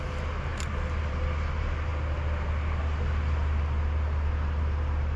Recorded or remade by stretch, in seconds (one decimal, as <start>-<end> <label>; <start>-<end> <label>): 0.0-5.2 recorded